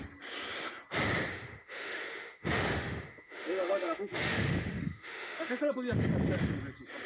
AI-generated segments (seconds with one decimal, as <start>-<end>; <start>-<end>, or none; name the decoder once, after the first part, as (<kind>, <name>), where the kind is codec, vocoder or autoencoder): 1.3-5.6 (autoencoder, DAC-VAE)

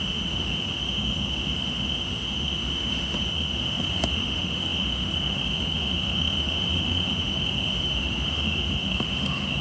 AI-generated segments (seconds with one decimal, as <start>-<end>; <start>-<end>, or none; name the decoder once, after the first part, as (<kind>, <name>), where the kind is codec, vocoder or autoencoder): 0.0-9.6 (autoencoder, DAC-VAE)